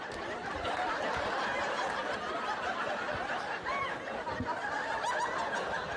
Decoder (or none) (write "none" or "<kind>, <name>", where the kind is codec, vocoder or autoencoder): none